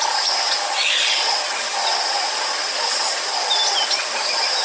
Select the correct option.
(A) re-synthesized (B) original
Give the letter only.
B